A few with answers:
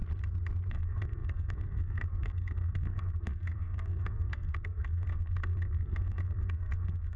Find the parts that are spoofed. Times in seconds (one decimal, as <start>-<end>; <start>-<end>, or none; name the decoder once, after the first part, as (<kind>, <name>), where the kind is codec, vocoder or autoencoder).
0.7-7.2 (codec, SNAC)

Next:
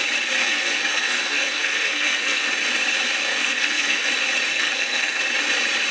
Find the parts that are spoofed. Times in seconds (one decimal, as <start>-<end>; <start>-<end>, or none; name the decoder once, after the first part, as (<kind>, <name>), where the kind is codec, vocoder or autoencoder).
0.4-2.5 (codec, SNAC); 3.3-4.1; 4.5-5.2

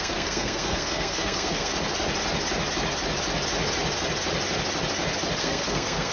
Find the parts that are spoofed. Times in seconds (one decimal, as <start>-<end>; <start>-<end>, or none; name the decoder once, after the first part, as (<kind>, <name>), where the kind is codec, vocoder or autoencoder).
0.0-1.7 (codec, SNAC); 5.4-6.1

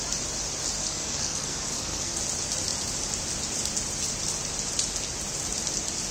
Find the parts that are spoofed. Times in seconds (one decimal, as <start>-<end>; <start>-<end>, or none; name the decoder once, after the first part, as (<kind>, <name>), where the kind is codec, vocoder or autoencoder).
0.8-2.2 (codec, SNAC)

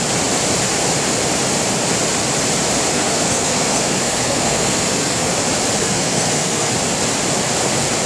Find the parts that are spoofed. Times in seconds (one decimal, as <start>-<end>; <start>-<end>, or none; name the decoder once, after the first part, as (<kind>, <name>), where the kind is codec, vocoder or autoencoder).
2.9-5.3 (codec, SNAC); 5.8-6.7

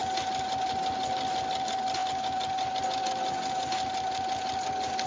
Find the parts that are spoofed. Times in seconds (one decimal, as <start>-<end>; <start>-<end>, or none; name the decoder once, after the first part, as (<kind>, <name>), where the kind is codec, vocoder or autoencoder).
none